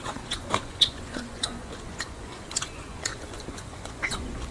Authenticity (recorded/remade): remade